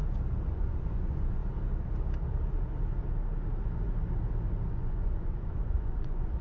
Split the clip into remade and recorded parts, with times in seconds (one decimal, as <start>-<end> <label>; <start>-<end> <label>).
0.0-0.5 recorded; 0.5-1.4 remade; 1.4-4.7 recorded; 4.7-6.4 remade